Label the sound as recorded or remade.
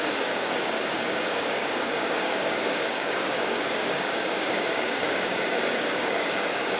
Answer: remade